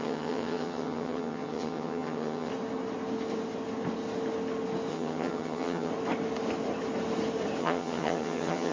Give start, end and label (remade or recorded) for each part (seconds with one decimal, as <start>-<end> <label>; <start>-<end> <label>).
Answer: 0.0-2.5 remade; 2.5-4.9 recorded; 4.9-5.9 remade; 5.9-7.6 recorded; 7.6-8.7 remade